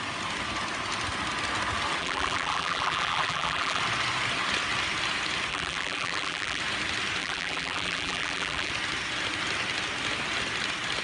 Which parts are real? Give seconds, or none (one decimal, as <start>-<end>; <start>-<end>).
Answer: 0.0-2.0; 3.8-5.5; 6.6-7.2; 8.7-11.0

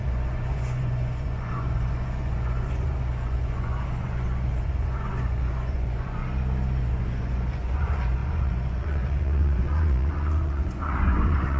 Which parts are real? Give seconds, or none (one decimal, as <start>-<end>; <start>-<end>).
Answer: 6.2-6.8

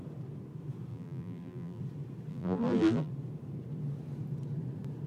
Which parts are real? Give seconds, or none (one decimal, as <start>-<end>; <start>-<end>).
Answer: 0.0-0.9; 1.8-2.3; 3.1-5.1

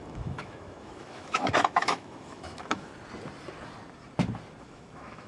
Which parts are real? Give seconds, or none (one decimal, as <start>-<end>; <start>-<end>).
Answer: 2.9-4.6